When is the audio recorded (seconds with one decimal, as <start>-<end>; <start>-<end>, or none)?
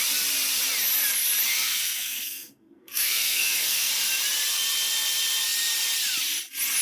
0.0-1.5; 3.9-6.8